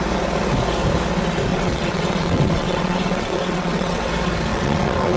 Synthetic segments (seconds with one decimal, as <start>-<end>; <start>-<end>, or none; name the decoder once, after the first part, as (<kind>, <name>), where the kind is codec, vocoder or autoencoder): 1.5-4.1 (vocoder, WaveNeXt); 4.5-5.2